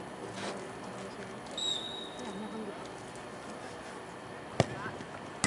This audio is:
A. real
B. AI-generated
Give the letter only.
A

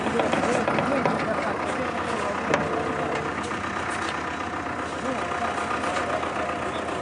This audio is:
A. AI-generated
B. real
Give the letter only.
B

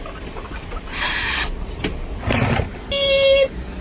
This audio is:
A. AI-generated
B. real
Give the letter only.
B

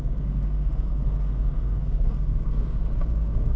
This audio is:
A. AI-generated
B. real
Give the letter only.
A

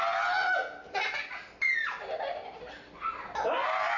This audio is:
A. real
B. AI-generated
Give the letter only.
A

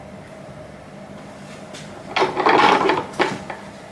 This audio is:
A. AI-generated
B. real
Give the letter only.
B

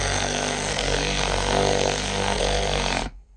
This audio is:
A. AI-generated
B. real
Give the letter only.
A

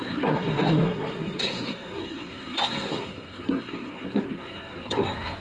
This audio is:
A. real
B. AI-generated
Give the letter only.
B